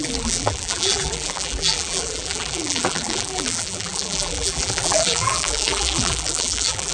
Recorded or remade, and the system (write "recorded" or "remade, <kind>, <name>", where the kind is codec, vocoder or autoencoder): remade, vocoder, BigVGAN v2